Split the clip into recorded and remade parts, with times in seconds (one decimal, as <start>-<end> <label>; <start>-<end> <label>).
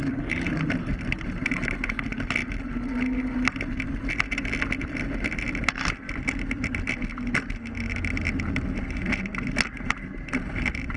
0.0-11.0 recorded